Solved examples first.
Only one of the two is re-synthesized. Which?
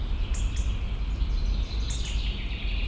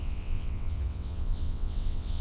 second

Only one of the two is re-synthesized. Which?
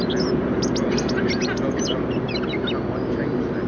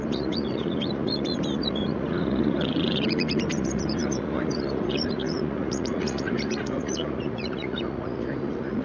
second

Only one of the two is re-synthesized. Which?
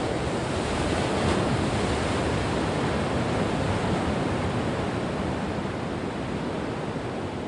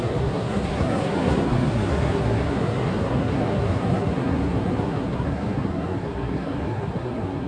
second